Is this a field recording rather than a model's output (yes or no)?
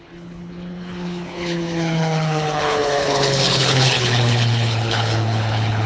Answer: no